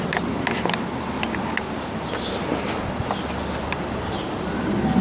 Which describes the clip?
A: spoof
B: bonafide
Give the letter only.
B